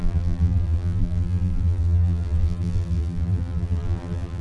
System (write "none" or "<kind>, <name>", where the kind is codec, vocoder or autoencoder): vocoder, BigVGAN v2